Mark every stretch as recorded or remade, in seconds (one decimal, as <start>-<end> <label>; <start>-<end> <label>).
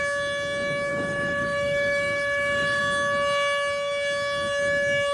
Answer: 0.0-0.9 recorded; 0.9-2.8 remade; 2.8-5.1 recorded